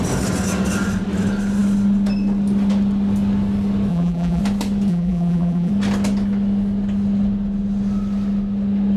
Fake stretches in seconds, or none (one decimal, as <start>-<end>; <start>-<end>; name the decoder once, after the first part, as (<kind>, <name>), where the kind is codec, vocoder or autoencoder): 3.9-4.4 (vocoder, BigVGAN v2); 4.9-5.7